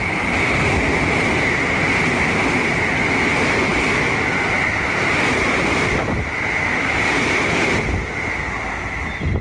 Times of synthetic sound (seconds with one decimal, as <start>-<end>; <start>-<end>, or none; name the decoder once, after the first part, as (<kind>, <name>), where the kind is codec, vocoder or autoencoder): none